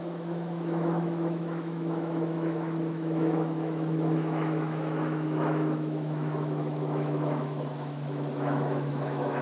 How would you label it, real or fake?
fake